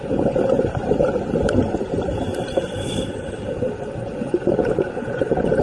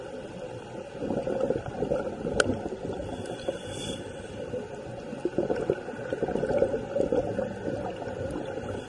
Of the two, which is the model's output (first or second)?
first